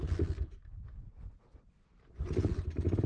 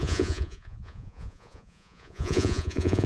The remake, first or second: second